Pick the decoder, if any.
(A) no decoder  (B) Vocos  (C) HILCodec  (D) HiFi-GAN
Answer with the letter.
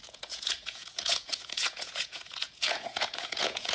B